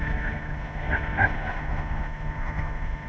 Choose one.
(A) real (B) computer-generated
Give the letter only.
B